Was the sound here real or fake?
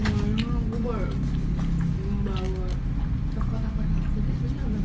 real